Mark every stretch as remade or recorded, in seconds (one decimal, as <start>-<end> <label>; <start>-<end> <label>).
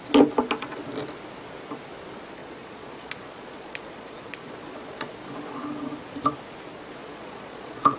0.0-2.4 recorded; 2.4-5.1 remade; 5.1-7.0 recorded; 7.0-8.0 remade